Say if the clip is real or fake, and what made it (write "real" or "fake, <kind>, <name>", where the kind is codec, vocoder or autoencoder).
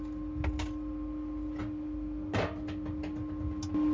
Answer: real